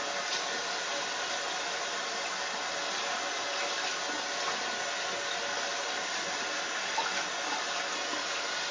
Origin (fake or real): real